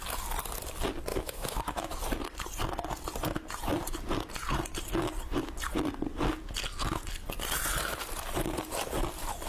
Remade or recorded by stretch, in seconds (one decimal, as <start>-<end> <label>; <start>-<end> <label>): 0.0-1.1 recorded; 1.1-1.9 remade; 1.9-9.5 recorded